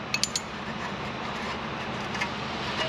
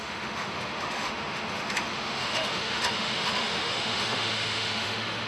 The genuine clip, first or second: first